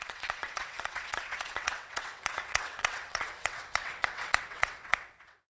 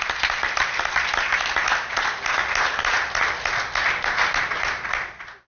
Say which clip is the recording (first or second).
second